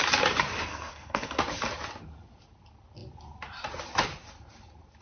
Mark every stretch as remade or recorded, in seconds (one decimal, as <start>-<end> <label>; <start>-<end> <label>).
0.0-0.5 recorded; 0.5-1.4 remade; 1.4-5.0 recorded